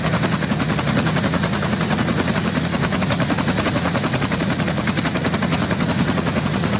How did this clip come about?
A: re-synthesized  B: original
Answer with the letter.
A